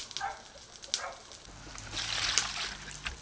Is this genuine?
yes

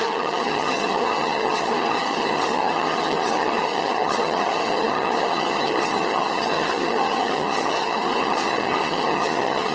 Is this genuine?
no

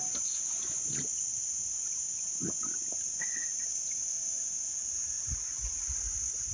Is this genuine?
yes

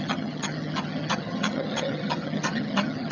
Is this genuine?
no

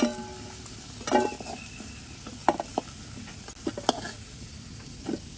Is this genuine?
yes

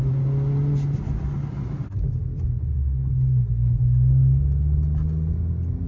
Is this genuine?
yes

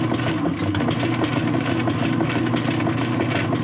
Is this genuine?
yes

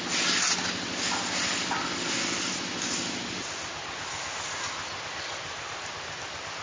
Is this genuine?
yes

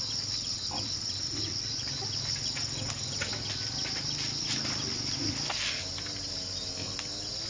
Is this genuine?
yes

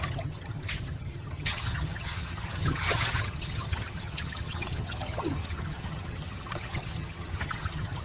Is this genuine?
no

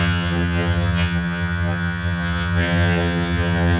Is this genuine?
no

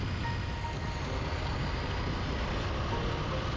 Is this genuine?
yes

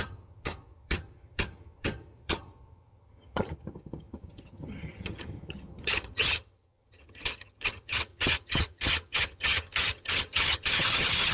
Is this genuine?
no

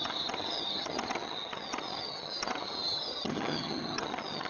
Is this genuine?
no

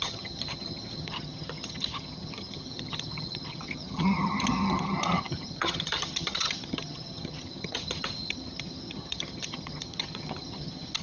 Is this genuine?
no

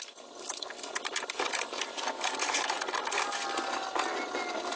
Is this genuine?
yes